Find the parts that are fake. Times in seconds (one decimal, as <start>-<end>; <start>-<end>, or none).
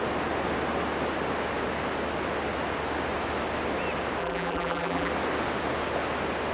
4.2-5.1